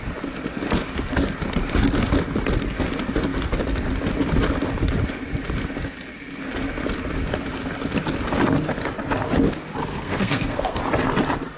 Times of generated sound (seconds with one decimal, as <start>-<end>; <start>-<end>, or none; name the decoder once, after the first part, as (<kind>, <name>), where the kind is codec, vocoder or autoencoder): 9.9-10.8 (codec, SNAC)